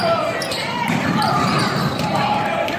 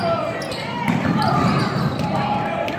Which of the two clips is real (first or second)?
second